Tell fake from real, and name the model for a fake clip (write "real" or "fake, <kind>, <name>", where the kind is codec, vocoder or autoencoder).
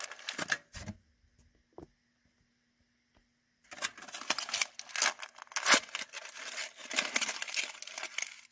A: real